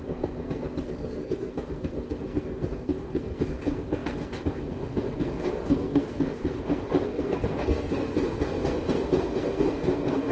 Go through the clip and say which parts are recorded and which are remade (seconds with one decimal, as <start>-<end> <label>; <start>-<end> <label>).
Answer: 0.0-10.3 remade